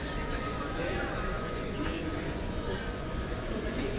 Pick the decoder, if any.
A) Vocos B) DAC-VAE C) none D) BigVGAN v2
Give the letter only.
A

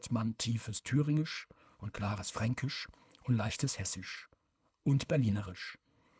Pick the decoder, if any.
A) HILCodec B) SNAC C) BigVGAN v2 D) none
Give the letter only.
A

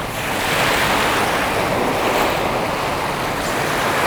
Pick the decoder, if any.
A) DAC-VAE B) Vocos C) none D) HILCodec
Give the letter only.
C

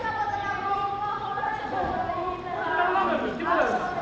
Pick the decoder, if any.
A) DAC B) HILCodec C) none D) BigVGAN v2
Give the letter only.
C